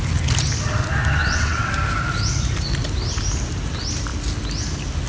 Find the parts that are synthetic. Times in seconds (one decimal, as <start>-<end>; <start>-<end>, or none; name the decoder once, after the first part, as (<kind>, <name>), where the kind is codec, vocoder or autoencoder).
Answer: 1.2-1.7 (vocoder, WaveNeXt)